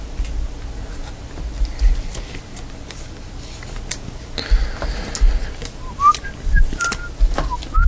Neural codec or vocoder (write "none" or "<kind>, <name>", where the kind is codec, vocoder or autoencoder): none